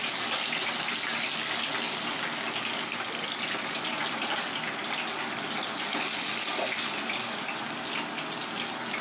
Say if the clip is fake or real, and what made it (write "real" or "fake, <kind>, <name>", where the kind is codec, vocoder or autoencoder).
real